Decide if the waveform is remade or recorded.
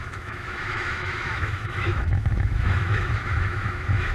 remade